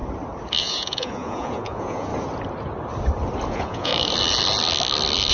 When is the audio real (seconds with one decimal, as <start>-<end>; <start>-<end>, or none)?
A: 0.0-0.6; 2.1-3.5; 3.9-5.3